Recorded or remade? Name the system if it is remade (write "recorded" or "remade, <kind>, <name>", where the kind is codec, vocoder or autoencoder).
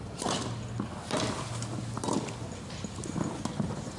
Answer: recorded